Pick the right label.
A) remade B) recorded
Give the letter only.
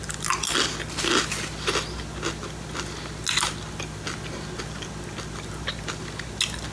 B